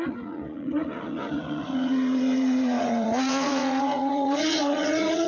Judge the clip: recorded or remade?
remade